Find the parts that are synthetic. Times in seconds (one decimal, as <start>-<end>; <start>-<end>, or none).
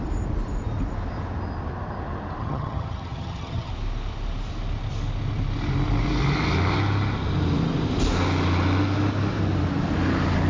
2.4-3.7